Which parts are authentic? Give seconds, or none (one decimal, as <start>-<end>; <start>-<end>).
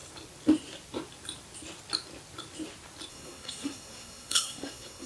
0.0-3.1